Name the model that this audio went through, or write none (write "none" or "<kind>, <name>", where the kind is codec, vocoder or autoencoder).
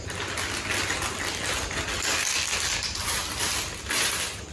none